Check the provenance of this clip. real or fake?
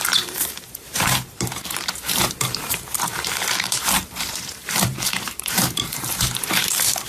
fake